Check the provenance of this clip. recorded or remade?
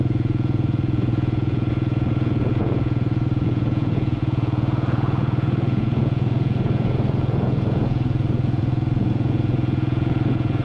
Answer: remade